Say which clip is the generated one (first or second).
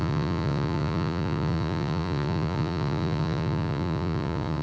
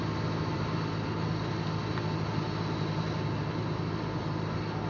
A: first